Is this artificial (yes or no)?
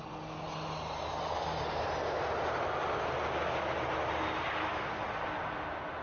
no